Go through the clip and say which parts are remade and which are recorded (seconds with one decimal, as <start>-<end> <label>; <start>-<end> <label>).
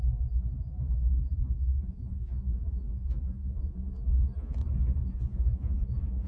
0.0-4.6 remade; 4.6-5.1 recorded; 5.1-6.3 remade